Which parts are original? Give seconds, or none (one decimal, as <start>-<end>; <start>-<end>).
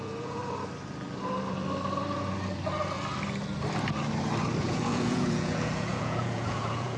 0.4-4.6